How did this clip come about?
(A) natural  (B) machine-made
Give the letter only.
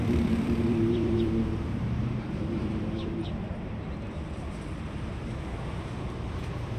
B